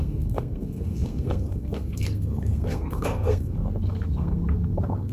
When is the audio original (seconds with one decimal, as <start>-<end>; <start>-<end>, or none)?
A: none